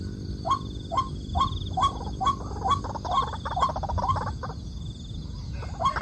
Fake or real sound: real